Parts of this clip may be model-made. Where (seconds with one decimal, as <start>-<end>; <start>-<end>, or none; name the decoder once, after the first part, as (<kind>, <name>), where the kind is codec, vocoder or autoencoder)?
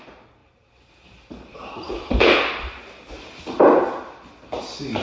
0.4-3.4 (vocoder, BigVGAN v2)